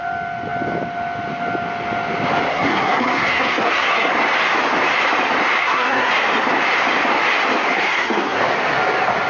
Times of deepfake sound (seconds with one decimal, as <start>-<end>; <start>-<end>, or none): 2.5-4.1; 5.6-6.1; 7.7-8.4